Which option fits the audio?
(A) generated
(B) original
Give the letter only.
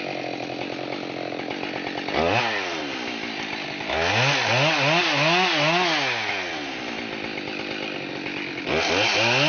B